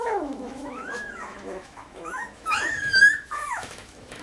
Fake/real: fake